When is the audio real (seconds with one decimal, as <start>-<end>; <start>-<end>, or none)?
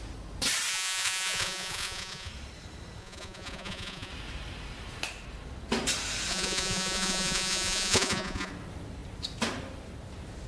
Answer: 0.0-0.7; 2.3-3.0; 4.1-6.3; 8.5-10.5